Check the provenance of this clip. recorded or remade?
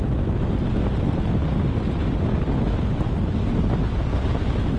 recorded